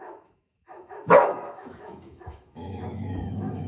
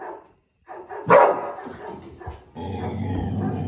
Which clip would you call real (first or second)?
second